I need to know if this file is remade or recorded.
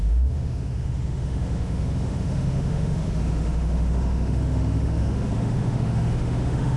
remade